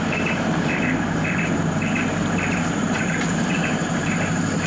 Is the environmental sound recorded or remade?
remade